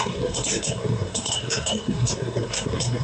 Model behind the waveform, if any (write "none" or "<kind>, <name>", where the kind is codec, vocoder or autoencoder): codec, SNAC